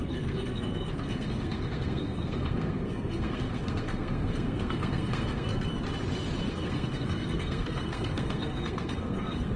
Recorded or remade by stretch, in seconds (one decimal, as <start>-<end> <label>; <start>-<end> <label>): 0.0-5.7 remade; 5.7-6.5 recorded; 6.5-9.6 remade